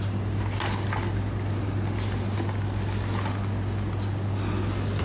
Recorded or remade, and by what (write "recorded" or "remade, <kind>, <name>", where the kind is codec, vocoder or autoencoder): recorded